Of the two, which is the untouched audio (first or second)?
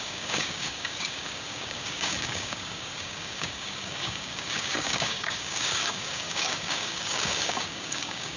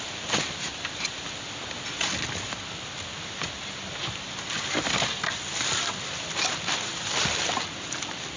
second